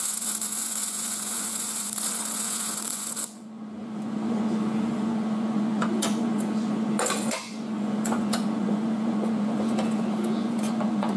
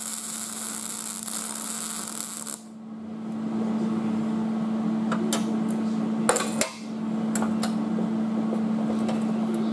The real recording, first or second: second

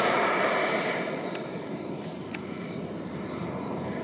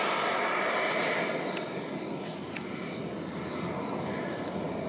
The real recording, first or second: second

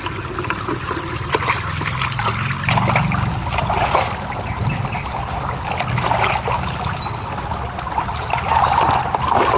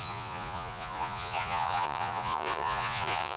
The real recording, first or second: first